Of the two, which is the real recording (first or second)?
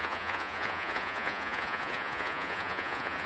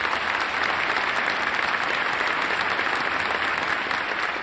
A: second